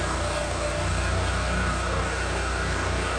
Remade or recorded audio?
remade